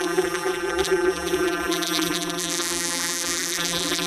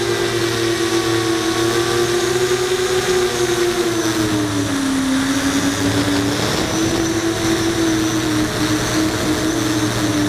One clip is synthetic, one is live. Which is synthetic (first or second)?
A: first